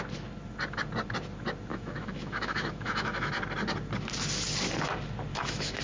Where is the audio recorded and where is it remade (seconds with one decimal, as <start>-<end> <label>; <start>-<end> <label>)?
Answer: 0.0-1.7 recorded; 1.7-3.3 remade; 3.3-5.3 recorded; 5.3-5.8 remade

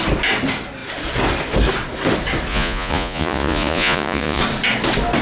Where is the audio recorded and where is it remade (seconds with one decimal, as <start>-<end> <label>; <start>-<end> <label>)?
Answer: 0.0-2.5 recorded; 2.5-4.4 remade; 4.4-5.2 recorded